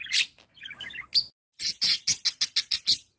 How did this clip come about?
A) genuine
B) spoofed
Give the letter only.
A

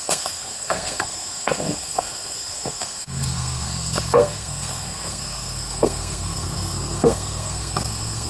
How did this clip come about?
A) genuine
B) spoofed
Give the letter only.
B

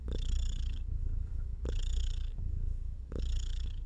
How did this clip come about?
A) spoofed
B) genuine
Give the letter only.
A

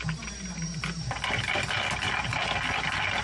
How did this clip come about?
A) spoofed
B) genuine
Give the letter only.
B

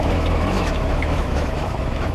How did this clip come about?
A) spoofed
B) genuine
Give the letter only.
A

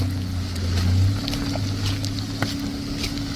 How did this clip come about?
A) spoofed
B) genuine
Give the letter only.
B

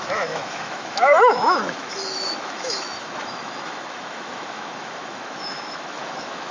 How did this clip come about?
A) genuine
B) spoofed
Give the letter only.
B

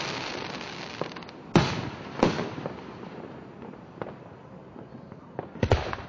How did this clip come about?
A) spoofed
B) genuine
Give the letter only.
B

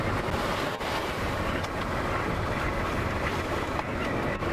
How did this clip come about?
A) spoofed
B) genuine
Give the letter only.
B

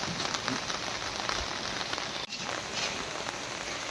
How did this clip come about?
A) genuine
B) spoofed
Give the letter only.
A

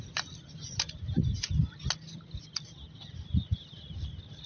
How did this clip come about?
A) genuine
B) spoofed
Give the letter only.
A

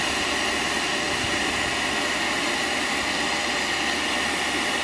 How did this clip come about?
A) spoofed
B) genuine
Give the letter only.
B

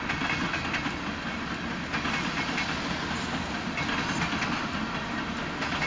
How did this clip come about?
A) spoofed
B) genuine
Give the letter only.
B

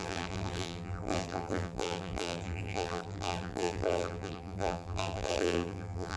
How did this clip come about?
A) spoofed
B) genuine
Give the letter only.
A